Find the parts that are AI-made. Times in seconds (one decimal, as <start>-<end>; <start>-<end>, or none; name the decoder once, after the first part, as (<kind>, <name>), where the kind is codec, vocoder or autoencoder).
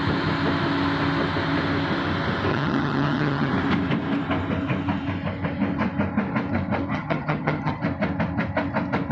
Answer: 2.5-3.5 (vocoder, HiFi-GAN); 6.9-7.8